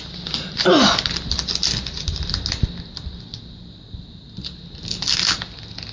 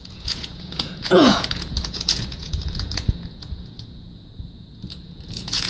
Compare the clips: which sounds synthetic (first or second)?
second